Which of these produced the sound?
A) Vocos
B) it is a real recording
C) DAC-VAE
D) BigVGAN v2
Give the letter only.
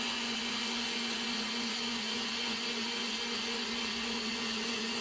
A